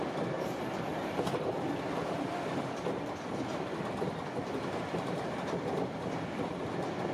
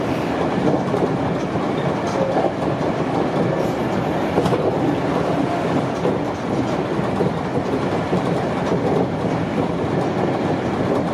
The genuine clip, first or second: second